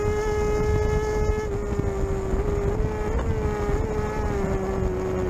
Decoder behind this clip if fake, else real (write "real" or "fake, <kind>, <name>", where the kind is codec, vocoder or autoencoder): real